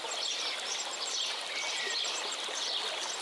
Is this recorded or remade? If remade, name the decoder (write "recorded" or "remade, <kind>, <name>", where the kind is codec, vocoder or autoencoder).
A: recorded